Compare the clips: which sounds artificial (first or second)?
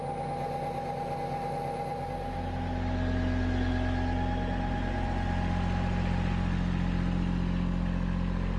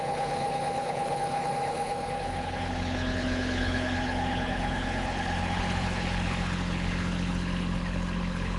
second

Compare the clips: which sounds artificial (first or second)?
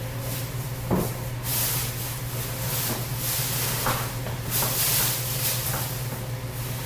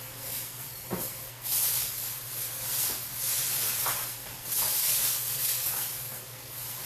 second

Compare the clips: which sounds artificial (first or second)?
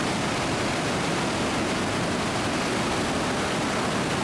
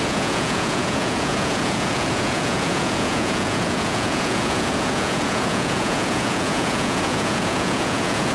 second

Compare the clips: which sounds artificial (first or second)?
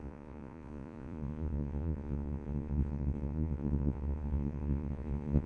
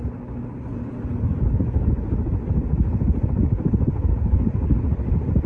first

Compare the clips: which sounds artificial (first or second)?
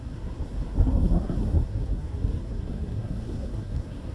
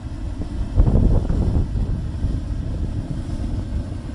first